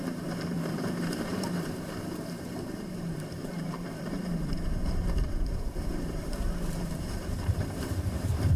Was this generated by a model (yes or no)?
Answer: yes